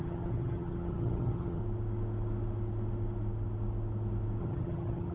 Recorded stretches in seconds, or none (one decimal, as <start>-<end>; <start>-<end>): 1.6-4.4